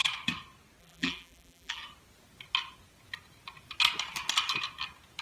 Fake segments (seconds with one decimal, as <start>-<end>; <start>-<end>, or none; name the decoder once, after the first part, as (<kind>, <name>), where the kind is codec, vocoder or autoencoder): 0.8-1.8 (vocoder, BigVGAN v2)